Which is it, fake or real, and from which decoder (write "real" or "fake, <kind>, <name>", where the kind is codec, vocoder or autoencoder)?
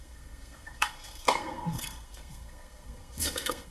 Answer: fake, codec, SNAC